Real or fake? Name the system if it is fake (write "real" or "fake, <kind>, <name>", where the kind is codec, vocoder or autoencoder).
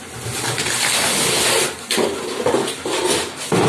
real